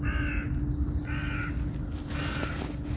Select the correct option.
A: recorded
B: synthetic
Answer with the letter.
A